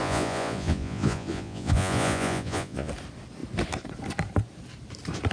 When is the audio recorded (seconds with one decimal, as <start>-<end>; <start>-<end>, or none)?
2.9-5.3